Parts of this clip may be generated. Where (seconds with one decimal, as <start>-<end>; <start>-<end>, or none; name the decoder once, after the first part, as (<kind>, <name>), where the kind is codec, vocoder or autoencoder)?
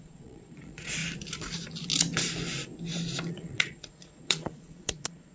0.0-1.0 (vocoder, Vocos); 3.3-5.3